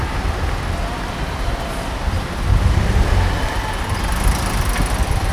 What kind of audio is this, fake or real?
real